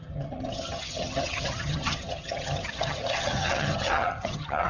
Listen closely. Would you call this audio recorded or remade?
remade